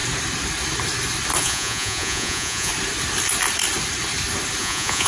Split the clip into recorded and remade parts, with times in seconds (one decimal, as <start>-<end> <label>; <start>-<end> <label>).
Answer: 0.0-1.4 recorded; 1.4-2.7 remade; 2.7-4.6 recorded; 4.6-5.1 remade